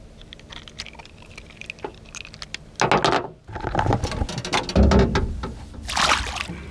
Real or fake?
real